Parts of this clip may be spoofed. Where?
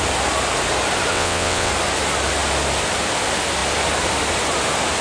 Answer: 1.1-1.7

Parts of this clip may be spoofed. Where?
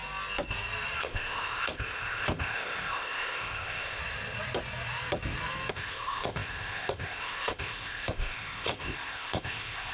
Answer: 1.0-4.0; 5.7-9.9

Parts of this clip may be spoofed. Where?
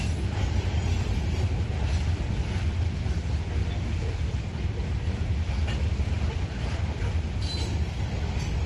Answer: none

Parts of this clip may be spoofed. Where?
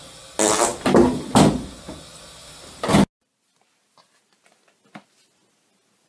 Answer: none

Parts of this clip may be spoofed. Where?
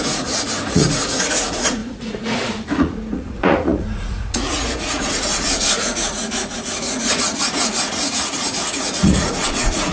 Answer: 0.0-9.9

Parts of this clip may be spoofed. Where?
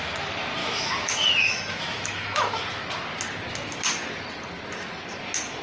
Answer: 0.6-2.6